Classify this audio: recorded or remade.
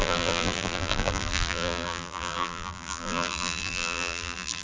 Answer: remade